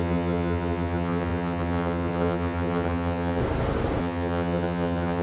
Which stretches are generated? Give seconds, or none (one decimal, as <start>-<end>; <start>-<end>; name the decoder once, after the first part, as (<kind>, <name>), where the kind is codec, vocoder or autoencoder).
0.0-3.4 (vocoder, HiFi-GAN); 4.0-5.2